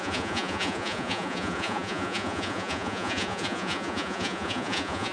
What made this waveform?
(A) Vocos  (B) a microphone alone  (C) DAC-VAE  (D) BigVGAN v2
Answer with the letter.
A